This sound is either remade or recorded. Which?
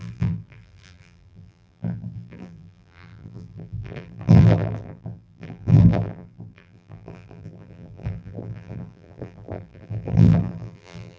remade